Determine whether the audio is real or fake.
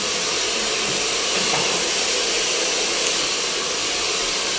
real